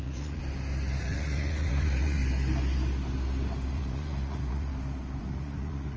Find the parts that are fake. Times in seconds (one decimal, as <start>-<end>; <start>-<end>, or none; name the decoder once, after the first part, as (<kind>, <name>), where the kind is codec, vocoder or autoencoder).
0.0-0.4 (vocoder, Vocos); 1.0-2.2; 3.7-4.7; 5.2-6.0